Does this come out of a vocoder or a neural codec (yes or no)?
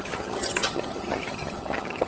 yes